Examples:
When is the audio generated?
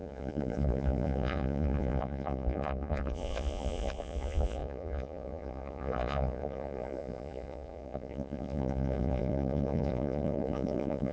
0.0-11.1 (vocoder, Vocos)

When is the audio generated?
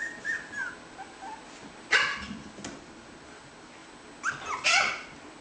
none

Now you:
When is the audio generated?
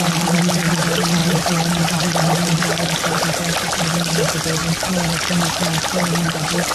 none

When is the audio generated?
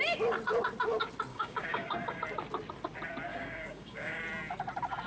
1.3-2.2 (codec, DAC); 3.3-4.2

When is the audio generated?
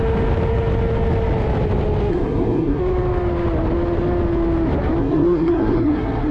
2.1-2.8 (codec, SNAC); 5.0-6.3